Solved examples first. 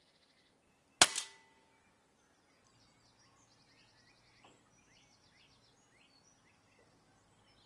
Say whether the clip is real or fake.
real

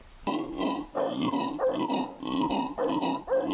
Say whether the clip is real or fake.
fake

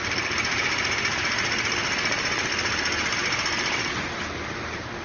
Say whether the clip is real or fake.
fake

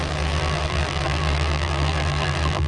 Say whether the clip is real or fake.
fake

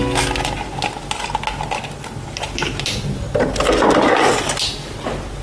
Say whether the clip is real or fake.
real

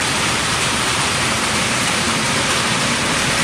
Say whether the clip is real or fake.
fake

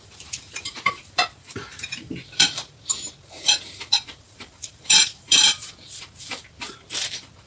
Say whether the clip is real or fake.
fake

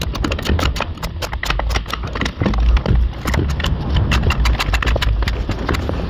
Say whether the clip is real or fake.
real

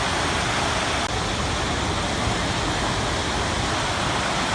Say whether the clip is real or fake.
real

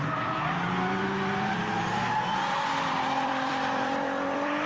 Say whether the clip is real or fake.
fake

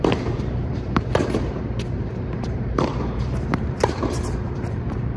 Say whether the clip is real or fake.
fake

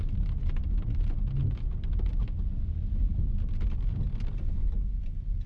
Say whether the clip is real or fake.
real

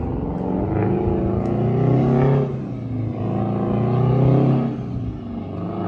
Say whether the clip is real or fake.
real